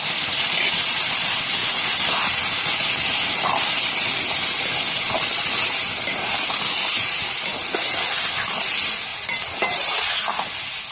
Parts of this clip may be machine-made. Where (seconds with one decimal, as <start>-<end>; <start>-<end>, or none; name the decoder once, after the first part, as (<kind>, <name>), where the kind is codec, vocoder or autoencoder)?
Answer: none